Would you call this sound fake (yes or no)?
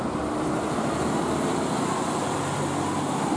no